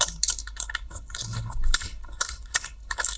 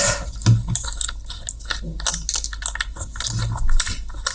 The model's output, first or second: first